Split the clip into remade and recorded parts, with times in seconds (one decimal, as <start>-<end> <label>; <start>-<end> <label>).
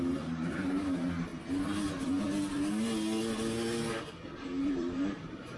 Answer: 0.0-1.3 remade; 1.3-4.7 recorded; 4.7-5.6 remade